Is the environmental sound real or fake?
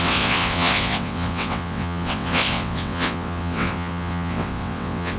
fake